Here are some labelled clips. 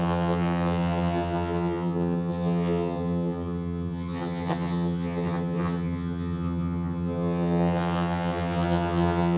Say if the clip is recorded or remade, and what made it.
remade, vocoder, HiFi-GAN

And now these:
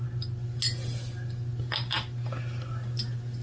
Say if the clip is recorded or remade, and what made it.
recorded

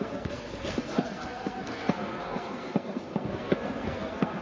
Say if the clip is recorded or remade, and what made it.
remade, codec, SNAC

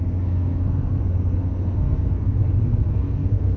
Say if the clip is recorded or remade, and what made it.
remade, codec, SNAC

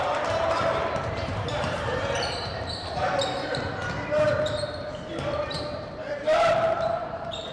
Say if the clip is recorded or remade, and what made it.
remade, vocoder, BigVGAN v2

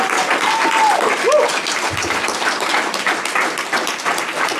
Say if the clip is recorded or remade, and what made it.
recorded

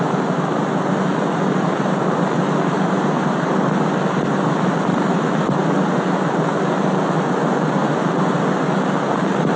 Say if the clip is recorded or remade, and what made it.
recorded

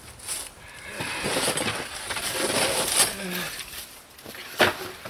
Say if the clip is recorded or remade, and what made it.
recorded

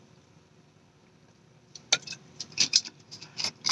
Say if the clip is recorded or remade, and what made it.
recorded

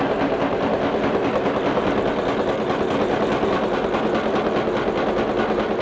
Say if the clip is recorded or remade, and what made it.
recorded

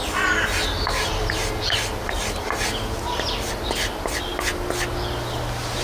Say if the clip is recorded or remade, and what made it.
recorded